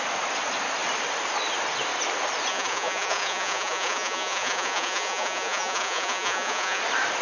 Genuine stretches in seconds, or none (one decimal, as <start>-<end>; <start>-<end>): 0.0-2.5; 6.8-7.2